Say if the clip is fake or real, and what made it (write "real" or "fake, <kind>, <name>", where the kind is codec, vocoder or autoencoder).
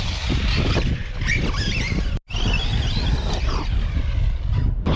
real